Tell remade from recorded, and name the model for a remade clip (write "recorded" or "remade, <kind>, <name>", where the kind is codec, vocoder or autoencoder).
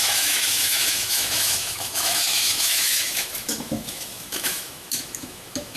remade, autoencoder, DAC-VAE